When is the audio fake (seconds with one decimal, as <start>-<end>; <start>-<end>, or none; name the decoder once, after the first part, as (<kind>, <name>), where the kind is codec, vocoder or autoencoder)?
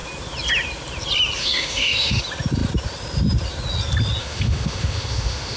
1.4-2.2 (autoencoder, DAC-VAE); 4.2-5.6